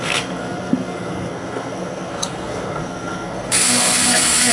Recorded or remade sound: remade